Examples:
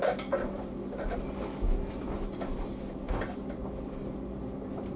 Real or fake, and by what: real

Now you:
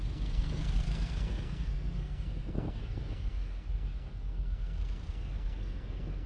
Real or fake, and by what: fake, codec, SNAC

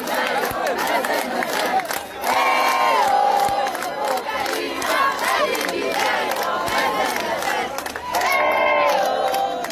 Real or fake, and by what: real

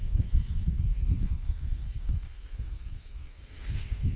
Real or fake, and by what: fake, codec, SNAC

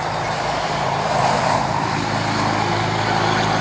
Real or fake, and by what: real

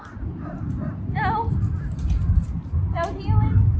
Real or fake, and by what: real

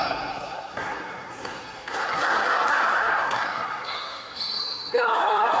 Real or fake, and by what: fake, codec, SNAC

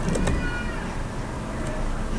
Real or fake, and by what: real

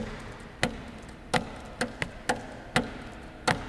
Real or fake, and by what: real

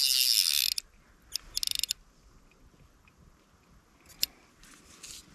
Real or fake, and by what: real